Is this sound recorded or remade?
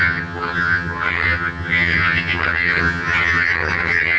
remade